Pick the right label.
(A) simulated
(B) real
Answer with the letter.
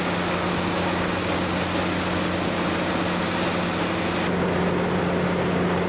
B